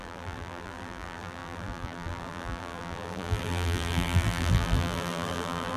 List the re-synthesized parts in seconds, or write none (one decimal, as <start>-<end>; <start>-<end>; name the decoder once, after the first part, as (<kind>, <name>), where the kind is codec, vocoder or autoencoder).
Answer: 0.0-5.8 (vocoder, BigVGAN v2)